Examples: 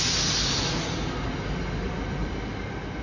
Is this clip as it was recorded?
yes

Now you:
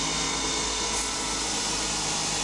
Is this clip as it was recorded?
yes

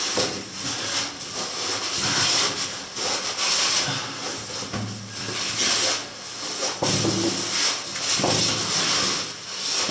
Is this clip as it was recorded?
yes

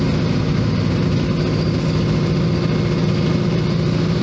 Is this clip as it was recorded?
yes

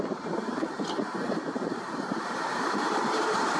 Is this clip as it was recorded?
no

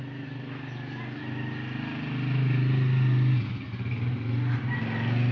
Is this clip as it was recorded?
yes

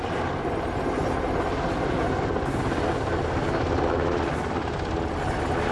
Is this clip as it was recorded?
yes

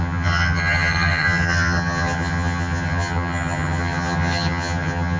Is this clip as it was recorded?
no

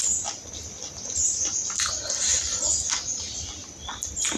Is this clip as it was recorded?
yes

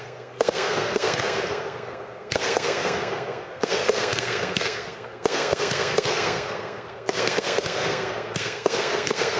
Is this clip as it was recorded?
no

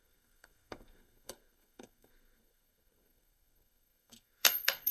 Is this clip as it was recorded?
no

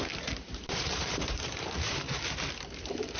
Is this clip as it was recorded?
no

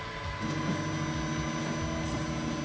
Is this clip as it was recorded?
yes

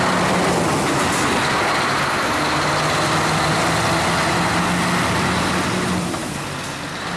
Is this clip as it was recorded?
yes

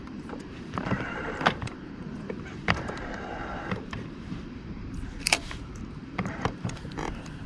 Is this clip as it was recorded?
no